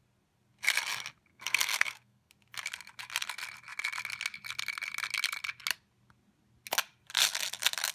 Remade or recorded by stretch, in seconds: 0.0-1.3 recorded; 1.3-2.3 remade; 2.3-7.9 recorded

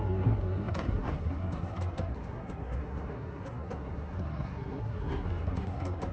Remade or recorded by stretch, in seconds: 0.0-6.1 remade

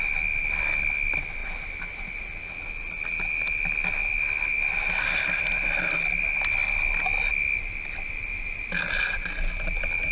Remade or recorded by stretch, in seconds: 0.0-10.1 recorded

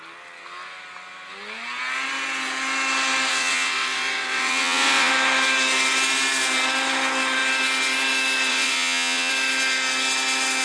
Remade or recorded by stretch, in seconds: 0.0-3.3 recorded; 3.3-5.1 remade; 5.1-8.5 recorded; 8.5-9.3 remade; 9.3-10.6 recorded

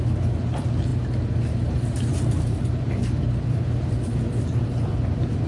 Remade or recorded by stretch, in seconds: 0.0-0.9 recorded; 0.9-2.9 remade; 2.9-5.5 recorded